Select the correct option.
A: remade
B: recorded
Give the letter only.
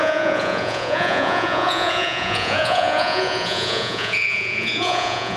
A